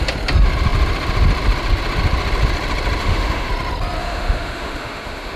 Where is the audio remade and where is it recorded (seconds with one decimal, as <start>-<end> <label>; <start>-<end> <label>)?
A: 0.0-3.0 recorded; 3.0-3.5 remade; 3.5-4.0 recorded; 4.0-5.4 remade